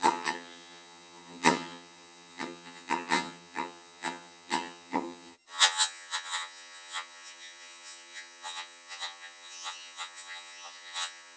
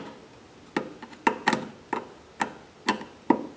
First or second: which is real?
second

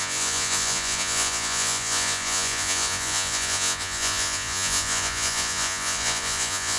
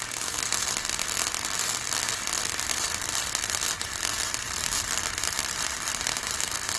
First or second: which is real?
second